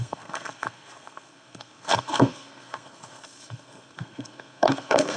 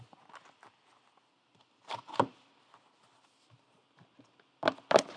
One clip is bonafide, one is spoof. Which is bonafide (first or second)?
second